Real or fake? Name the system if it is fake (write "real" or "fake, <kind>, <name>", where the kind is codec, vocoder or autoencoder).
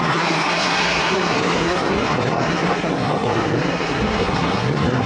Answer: fake, codec, SNAC